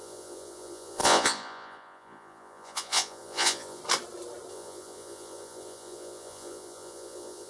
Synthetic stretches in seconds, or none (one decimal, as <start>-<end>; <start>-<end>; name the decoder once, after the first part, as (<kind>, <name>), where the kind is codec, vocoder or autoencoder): 0.0-3.8 (vocoder, Vocos); 4.5-7.5